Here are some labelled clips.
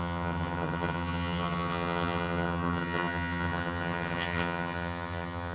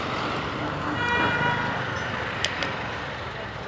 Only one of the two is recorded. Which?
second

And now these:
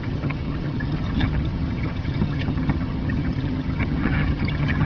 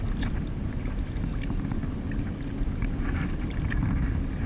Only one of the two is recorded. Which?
second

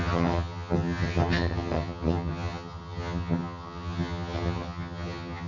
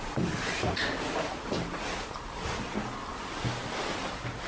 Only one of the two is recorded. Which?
second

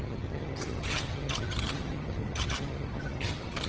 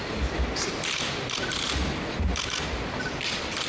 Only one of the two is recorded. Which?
second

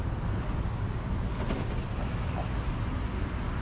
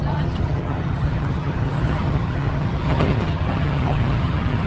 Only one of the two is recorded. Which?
first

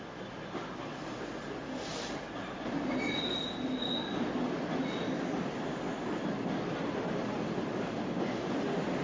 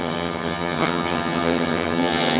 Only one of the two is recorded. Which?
first